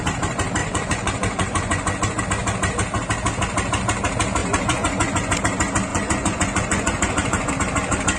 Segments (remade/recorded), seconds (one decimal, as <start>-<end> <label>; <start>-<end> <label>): 0.0-0.6 recorded; 0.6-2.2 remade; 2.2-4.4 recorded; 4.4-5.4 remade; 5.4-5.9 recorded; 5.9-7.5 remade; 7.5-8.2 recorded